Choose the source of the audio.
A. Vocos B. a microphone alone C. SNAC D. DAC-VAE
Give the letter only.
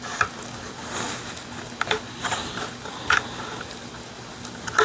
B